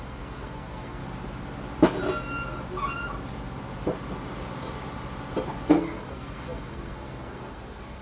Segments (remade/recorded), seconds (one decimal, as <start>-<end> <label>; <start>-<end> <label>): 0.0-1.0 remade; 1.0-5.7 recorded; 5.7-8.0 remade